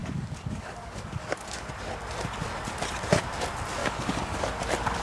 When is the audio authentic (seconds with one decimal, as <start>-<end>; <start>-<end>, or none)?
1.7-3.8; 4.6-5.0

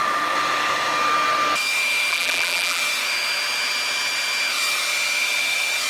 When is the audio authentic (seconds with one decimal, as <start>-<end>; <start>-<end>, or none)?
0.0-2.1; 2.8-5.9

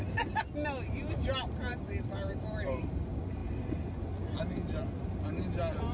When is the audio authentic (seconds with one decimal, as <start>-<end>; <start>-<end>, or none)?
0.0-5.9

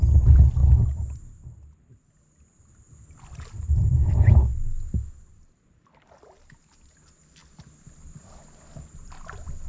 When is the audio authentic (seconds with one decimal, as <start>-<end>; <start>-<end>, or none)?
0.0-9.7

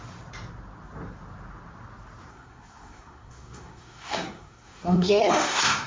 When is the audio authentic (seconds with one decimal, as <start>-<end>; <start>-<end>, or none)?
0.0-2.3

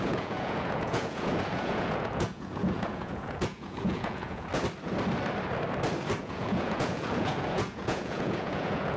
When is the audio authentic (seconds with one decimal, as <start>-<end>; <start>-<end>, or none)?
4.5-6.2